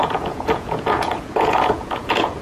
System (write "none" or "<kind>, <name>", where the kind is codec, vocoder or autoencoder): vocoder, Vocos